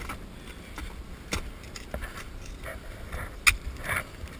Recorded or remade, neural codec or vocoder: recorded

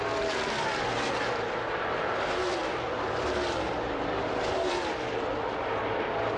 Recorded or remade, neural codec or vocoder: remade, vocoder, BigVGAN v2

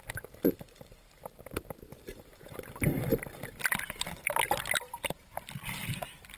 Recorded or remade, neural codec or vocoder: remade, vocoder, BigVGAN v2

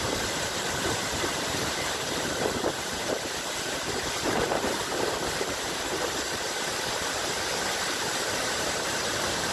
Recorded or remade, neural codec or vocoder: remade, vocoder, BigVGAN v2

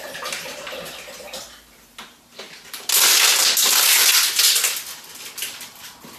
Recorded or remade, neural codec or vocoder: recorded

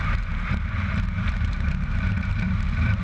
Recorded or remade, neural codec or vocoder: remade, vocoder, BigVGAN v2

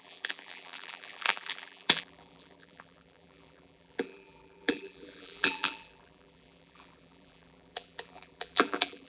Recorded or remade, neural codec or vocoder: remade, vocoder, BigVGAN v2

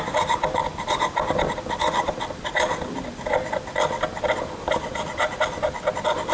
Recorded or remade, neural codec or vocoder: recorded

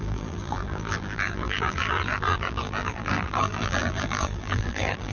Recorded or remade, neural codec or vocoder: remade, vocoder, BigVGAN v2